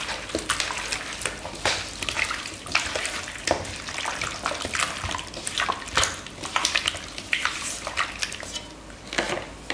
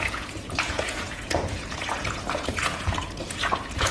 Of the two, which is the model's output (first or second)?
second